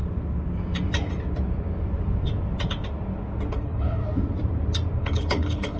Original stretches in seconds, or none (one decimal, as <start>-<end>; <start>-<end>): 0.0-3.5; 4.0-5.0